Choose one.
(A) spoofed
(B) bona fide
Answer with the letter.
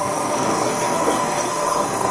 A